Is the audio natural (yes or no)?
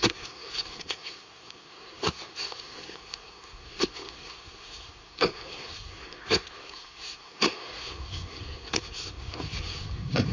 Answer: no